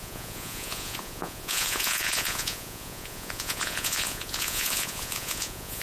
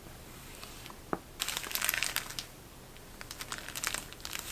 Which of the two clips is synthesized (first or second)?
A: first